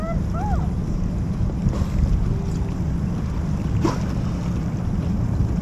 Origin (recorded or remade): recorded